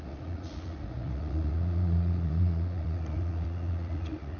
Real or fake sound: fake